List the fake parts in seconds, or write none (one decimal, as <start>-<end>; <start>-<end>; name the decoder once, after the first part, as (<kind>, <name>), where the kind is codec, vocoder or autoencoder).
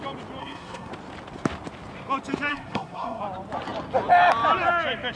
0.4-0.9 (codec, SNAC); 2.5-3.2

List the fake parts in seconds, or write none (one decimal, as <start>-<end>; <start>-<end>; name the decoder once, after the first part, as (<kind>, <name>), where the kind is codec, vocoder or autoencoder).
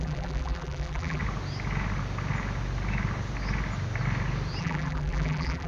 0.0-1.2 (vocoder, BigVGAN v2); 4.6-5.7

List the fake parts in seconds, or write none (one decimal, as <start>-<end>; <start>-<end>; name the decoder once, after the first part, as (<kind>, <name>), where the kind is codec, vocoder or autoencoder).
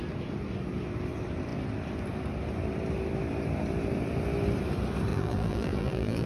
5.1-6.3 (vocoder, BigVGAN v2)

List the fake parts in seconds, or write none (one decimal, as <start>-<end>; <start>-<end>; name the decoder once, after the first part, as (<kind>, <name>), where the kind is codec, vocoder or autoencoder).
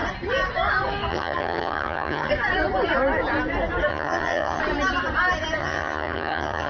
1.1-2.3 (vocoder, HiFi-GAN); 3.9-4.6; 5.6-6.7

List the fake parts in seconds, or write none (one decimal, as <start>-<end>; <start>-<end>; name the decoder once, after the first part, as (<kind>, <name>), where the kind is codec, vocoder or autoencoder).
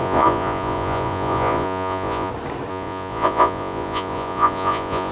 0.0-2.3 (vocoder, Vocos); 2.7-5.1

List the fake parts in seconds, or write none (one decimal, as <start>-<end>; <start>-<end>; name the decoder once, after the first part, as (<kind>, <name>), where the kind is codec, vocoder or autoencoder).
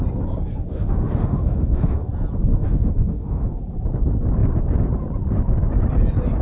0.7-2.1 (autoencoder, DAC-VAE); 2.5-3.6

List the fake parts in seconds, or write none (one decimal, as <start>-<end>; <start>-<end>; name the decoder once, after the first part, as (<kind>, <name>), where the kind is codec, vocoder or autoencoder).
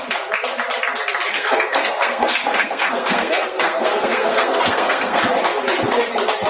1.3-5.2 (codec, SNAC)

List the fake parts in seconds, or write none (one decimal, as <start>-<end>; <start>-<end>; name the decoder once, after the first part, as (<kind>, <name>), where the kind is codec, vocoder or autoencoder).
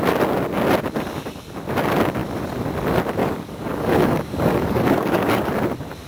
3.2-5.5 (codec, DAC)